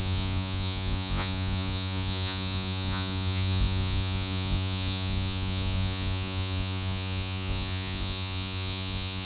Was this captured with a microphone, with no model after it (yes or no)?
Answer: no